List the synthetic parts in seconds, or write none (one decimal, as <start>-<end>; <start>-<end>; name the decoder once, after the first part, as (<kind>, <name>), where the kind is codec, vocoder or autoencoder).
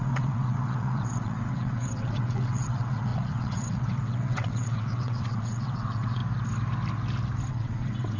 0.0-6.2 (vocoder, WaveNeXt); 7.5-8.2